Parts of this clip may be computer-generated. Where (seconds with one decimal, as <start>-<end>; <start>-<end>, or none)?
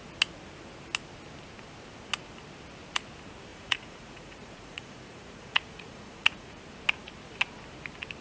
3.5-6.6